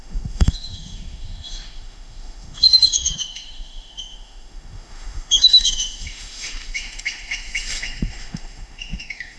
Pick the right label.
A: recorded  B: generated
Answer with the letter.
B